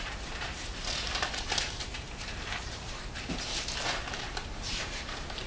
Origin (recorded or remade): remade